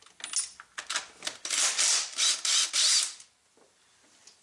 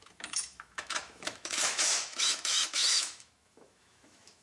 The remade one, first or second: second